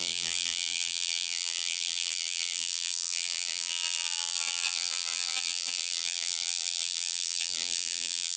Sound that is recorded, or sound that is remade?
remade